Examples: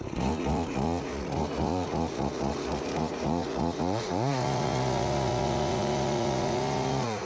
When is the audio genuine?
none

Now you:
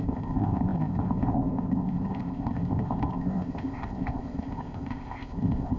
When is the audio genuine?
none

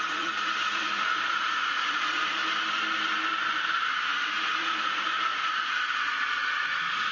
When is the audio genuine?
2.4-4.6

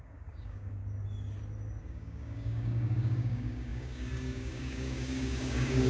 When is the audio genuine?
0.8-1.8

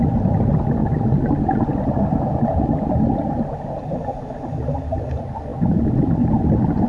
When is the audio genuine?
0.0-6.9

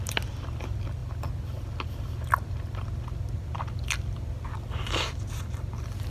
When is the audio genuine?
0.0-6.1

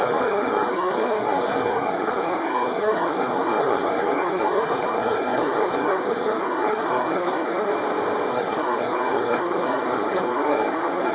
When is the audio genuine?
7.7-8.3

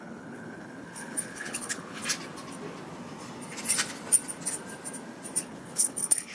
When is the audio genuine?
2.0-5.4